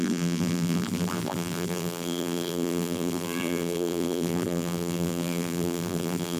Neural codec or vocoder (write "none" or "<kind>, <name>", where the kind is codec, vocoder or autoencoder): vocoder, BigVGAN v2